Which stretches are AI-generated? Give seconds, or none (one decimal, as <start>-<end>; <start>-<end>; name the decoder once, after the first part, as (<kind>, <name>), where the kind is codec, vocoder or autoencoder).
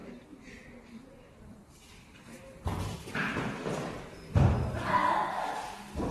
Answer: 0.5-5.0 (vocoder, BigVGAN v2)